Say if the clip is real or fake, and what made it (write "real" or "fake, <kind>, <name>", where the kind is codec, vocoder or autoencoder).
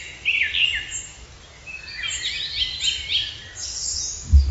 real